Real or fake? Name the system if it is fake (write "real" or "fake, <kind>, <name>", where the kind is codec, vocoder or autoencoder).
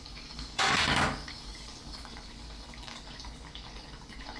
fake, codec, DAC